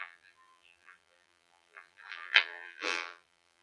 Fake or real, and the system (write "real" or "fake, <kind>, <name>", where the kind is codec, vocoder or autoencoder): fake, vocoder, BigVGAN v2